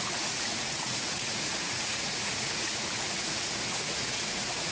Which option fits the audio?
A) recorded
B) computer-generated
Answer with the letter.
B